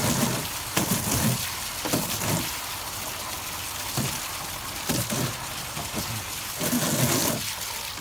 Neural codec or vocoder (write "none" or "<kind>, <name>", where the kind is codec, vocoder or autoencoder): none